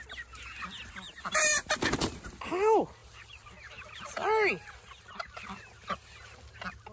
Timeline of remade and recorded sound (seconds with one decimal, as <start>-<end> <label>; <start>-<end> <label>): 0.0-6.9 recorded